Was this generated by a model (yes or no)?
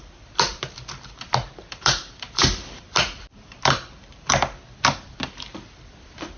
yes